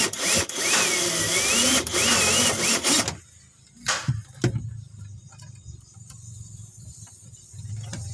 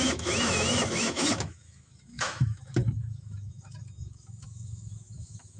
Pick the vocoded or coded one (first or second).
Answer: second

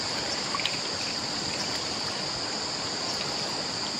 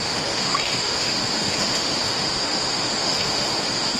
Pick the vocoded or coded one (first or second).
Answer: second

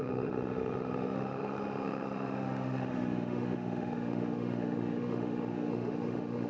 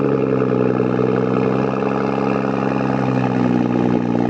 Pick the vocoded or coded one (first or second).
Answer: first